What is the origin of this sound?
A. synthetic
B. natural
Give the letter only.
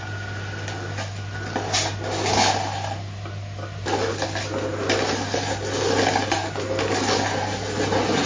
B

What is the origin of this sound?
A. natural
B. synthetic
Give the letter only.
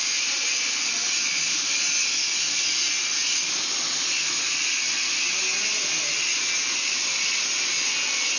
A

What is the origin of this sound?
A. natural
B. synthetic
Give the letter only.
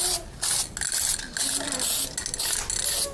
A